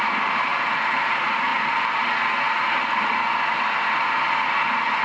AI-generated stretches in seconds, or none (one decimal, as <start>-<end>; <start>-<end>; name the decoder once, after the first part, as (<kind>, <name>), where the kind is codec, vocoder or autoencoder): 0.5-1.1 (vocoder, BigVGAN v2)